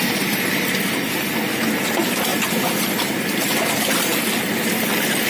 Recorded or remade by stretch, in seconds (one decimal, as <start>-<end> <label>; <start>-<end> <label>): 0.0-5.3 recorded